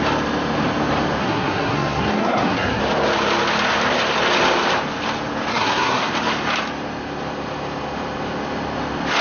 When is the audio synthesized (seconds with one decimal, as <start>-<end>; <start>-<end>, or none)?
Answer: 1.2-2.8; 5.5-6.1